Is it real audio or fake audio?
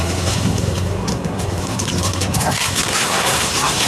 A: fake